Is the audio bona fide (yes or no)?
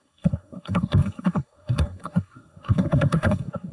no